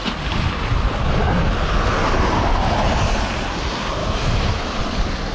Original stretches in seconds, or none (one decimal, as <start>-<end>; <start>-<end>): 0.0-4.0; 4.8-5.3